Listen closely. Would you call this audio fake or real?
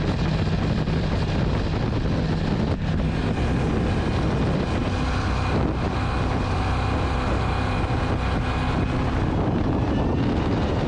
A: real